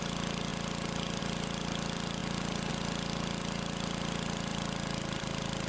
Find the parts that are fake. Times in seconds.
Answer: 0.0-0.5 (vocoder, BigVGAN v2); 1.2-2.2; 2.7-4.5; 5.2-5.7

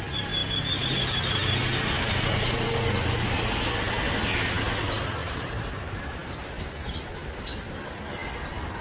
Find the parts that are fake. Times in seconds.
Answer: 5.2-6.3 (vocoder, BigVGAN v2)

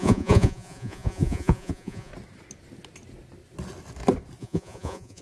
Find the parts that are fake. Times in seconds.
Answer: 0.0-2.1 (vocoder, Vocos); 4.4-5.2

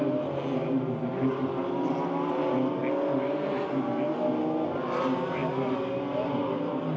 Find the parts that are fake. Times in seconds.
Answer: none